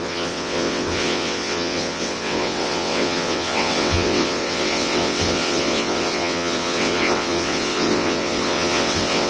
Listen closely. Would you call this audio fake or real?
fake